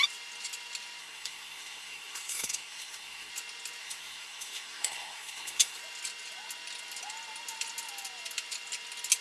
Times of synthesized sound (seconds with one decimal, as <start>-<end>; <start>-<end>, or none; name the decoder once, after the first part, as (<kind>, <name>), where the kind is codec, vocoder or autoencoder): 1.0-3.3 (codec, SNAC); 3.8-5.8